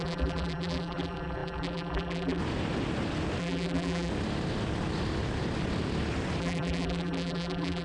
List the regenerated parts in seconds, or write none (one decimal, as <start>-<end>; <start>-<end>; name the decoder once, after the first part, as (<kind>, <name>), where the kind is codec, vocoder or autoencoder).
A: 0.0-2.4 (vocoder, BigVGAN v2); 3.4-4.1; 6.4-7.8